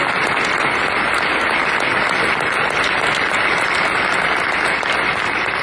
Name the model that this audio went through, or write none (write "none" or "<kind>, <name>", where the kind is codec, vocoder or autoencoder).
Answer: none